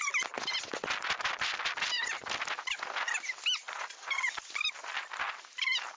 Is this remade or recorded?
recorded